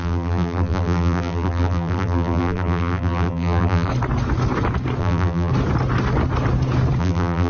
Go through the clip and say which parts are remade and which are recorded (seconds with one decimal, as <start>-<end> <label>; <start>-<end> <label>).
0.0-3.9 remade; 3.9-5.0 recorded; 5.0-5.5 remade; 5.5-7.0 recorded; 7.0-7.5 remade